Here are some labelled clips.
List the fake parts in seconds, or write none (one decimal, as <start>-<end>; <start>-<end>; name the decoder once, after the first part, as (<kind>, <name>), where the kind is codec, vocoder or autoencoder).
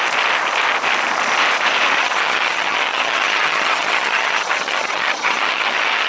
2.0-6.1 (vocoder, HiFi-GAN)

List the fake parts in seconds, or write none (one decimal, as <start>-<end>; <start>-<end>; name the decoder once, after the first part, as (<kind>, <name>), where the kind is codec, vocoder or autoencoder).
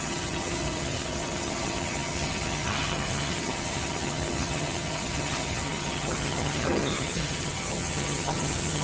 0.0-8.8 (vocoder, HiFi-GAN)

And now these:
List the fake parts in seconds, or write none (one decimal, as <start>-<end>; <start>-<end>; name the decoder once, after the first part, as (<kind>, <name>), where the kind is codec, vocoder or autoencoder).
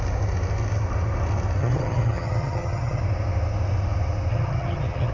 1.6-3.0 (vocoder, HiFi-GAN); 4.3-5.1